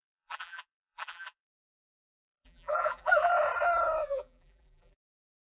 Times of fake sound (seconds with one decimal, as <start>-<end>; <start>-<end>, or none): 0.0-3.3; 4.0-5.5